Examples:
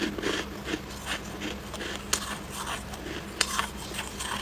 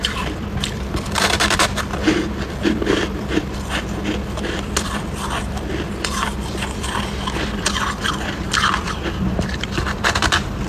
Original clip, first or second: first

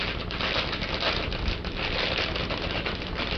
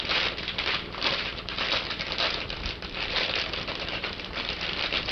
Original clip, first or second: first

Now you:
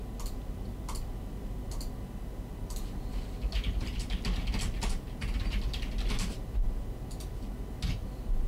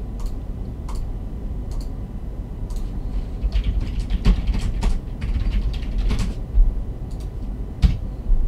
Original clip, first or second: first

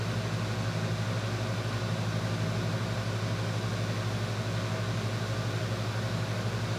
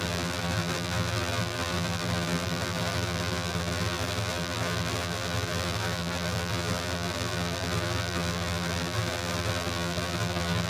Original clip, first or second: first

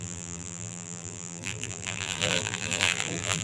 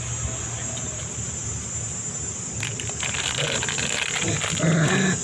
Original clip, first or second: second